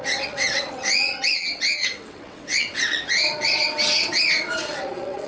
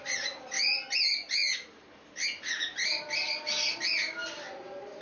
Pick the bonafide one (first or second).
second